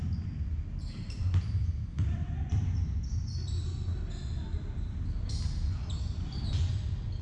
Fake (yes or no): no